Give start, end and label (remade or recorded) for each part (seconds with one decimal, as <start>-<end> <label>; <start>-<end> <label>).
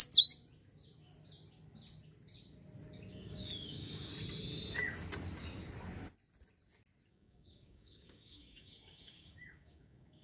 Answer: 0.0-3.1 recorded; 3.1-4.1 remade; 4.1-7.1 recorded; 7.1-10.2 remade